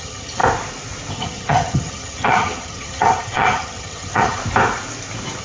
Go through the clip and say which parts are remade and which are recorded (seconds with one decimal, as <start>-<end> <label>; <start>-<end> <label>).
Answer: 0.0-0.4 remade; 0.4-1.1 recorded; 1.1-4.4 remade; 4.4-5.4 recorded